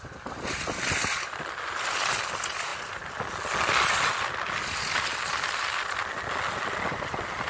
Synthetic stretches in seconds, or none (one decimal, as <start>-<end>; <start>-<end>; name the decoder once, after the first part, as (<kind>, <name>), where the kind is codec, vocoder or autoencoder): none